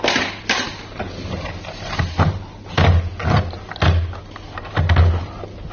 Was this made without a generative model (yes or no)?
yes